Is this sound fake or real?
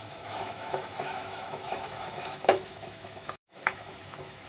fake